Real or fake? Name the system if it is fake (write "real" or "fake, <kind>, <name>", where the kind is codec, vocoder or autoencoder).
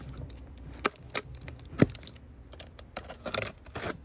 real